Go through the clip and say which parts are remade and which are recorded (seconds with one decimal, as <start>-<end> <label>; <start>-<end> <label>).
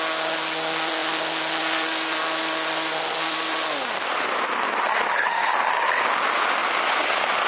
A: 0.0-7.5 recorded